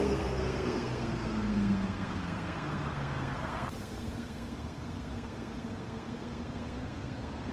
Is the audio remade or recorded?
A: remade